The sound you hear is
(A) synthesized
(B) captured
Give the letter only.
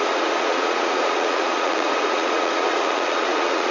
A